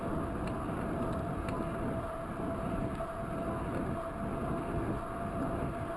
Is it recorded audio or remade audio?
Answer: recorded